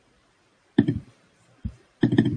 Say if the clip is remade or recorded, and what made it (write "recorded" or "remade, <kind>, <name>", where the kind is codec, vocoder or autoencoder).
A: remade, vocoder, BigVGAN v2